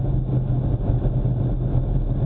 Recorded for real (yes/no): yes